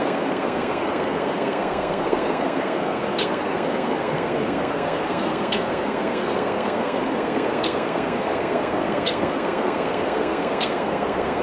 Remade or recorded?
remade